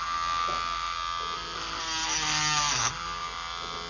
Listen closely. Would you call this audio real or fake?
real